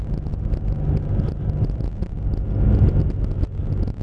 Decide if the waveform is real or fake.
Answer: real